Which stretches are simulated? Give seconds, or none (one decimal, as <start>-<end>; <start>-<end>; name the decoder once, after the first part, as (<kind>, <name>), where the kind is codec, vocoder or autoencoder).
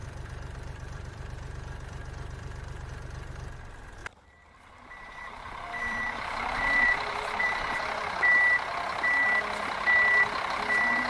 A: 0.0-2.9 (vocoder, BigVGAN v2); 4.0-8.3